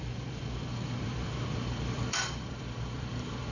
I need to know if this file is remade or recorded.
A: remade